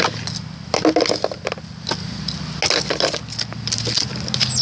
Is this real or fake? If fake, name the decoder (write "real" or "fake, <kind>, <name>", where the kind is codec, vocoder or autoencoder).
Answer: real